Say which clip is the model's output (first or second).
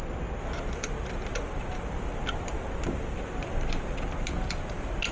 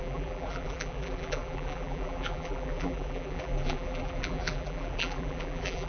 second